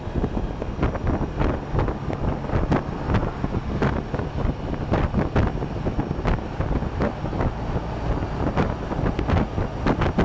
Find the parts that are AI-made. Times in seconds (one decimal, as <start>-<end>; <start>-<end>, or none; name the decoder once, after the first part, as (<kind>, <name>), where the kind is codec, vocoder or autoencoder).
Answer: none